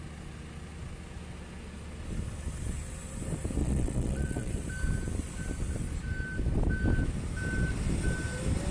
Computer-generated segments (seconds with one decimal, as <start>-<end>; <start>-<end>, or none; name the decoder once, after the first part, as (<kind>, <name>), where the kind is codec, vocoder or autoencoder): 3.6-4.5 (vocoder, Vocos)